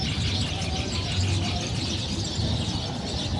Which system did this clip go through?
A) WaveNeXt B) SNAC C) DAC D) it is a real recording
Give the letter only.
D